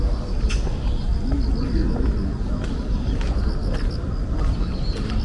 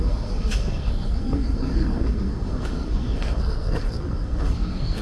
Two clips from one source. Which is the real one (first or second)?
first